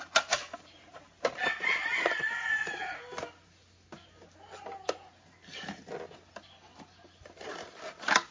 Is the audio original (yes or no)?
yes